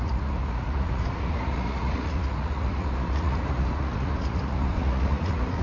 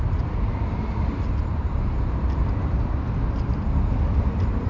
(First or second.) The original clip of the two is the second